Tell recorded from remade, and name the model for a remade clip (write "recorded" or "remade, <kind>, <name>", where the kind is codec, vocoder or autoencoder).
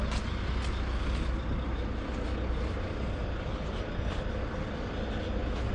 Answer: recorded